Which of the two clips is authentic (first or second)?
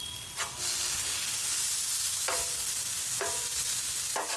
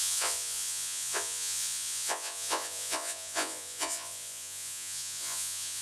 first